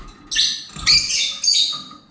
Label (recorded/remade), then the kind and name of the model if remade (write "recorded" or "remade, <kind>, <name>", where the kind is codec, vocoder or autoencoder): recorded